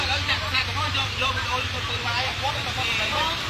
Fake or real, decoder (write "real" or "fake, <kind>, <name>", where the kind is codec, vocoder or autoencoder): fake, vocoder, BigVGAN v2